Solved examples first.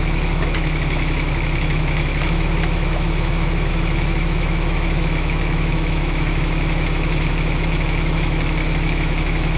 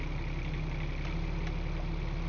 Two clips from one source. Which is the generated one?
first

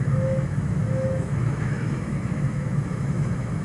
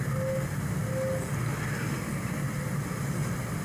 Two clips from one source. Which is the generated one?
first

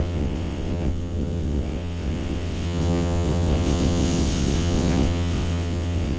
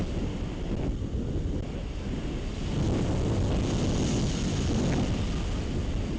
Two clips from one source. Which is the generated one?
first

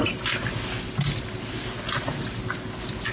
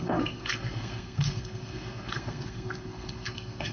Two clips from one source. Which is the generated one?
second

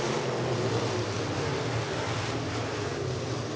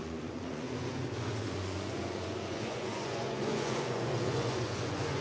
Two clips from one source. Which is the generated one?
second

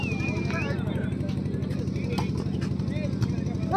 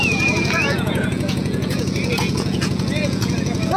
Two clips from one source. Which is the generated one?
second